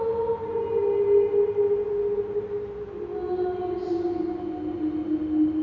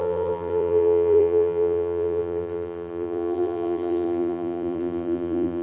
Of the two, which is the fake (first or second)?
second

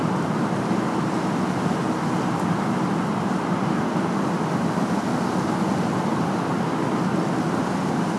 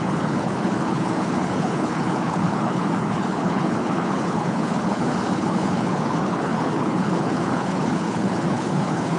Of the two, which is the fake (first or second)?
second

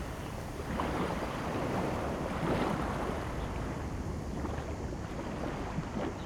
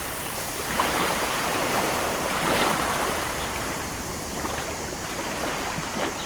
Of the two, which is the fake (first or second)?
second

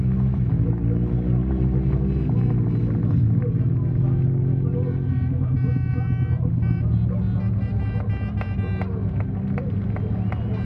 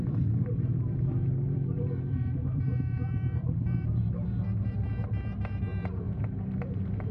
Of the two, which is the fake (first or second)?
second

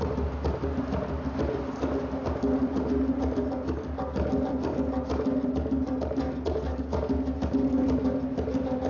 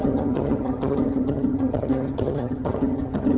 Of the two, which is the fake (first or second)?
second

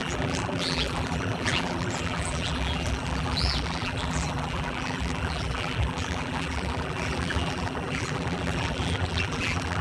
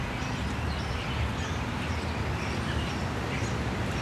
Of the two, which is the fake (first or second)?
first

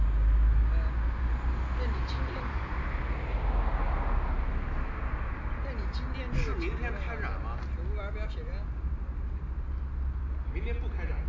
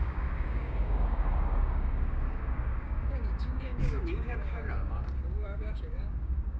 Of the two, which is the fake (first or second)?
second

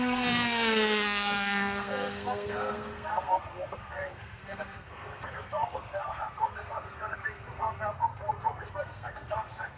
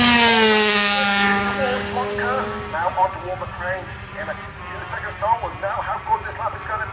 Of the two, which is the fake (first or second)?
first